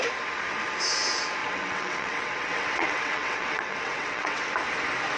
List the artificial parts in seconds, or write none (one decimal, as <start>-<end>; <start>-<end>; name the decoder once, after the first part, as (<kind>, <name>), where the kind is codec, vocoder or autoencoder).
1.4-4.5 (vocoder, WaveNeXt)